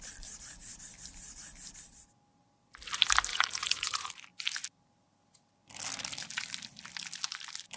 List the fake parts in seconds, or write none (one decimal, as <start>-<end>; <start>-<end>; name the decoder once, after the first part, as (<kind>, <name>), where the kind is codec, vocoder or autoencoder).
3.3-4.1 (vocoder, Vocos)